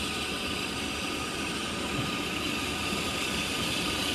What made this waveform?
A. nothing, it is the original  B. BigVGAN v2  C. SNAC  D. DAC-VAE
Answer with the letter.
A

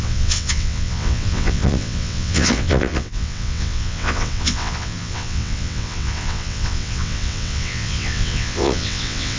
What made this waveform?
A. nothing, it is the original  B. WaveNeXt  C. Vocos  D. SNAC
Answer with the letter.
B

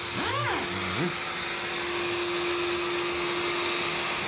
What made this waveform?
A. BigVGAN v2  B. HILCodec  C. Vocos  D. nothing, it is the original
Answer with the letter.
D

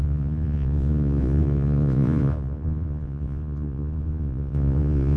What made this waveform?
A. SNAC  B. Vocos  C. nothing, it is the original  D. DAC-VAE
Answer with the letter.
B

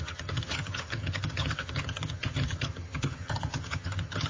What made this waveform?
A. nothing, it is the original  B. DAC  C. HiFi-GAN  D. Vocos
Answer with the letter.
C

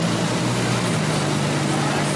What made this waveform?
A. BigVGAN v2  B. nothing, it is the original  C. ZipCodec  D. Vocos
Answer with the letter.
B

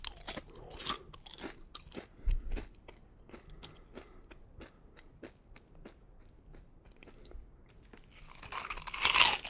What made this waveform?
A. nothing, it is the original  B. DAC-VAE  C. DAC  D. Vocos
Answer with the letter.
A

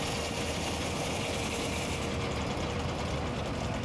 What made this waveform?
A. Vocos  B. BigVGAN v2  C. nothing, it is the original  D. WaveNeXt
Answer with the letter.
C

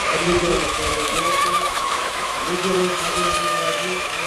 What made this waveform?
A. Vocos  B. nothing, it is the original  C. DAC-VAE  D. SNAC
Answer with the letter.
C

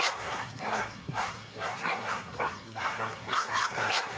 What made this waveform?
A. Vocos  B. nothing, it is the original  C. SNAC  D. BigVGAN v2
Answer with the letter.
C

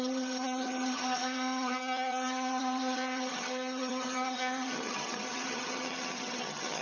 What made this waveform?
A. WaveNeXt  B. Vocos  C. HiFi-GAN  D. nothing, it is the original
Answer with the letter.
C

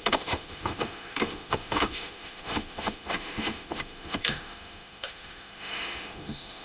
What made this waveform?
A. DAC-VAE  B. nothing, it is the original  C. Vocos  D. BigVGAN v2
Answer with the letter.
A